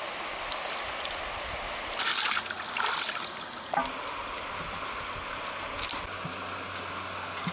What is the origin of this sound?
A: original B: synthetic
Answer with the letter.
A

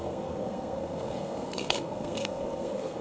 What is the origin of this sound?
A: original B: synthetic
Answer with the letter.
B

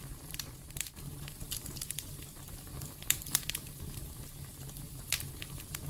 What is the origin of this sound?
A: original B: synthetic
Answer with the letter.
B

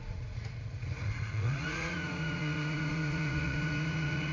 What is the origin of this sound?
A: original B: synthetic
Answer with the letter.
B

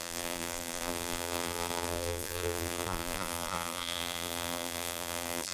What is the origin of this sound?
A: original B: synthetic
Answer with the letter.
B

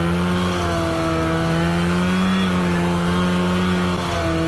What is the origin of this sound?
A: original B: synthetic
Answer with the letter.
A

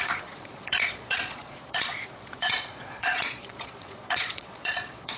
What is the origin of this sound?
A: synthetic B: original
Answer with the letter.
A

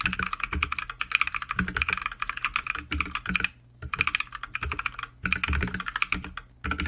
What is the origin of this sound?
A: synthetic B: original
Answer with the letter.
B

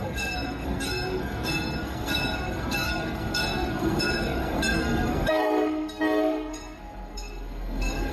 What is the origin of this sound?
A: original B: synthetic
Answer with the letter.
B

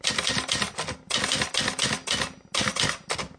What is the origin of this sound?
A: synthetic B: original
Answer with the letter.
B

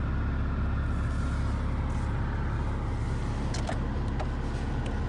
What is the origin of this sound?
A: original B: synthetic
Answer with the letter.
A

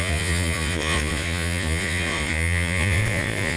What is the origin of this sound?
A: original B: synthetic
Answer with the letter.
B